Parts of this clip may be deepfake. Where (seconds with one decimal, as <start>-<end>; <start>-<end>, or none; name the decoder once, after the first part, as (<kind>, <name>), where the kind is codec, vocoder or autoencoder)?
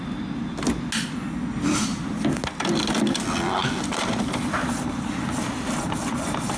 none